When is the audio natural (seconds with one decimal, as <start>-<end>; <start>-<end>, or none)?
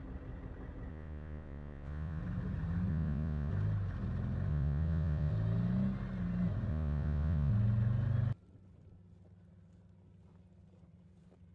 0.0-0.9; 2.2-2.9; 3.5-4.5; 5.3-6.7; 7.5-11.5